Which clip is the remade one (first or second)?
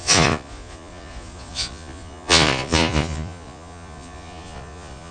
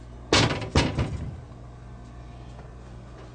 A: first